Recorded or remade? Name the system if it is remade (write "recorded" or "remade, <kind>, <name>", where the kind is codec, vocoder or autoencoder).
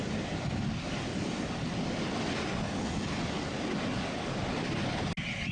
recorded